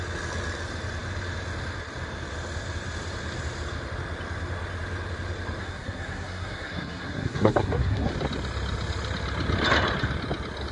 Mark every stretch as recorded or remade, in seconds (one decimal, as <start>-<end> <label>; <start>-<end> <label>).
0.0-5.6 recorded; 5.6-8.1 remade; 8.1-10.7 recorded